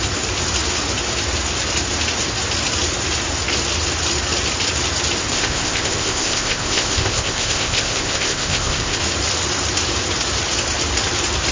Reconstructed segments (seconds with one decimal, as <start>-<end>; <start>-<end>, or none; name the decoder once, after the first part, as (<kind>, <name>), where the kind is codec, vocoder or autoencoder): 5.3-9.0 (codec, ZipCodec)